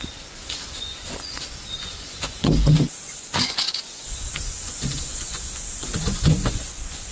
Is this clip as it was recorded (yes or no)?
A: no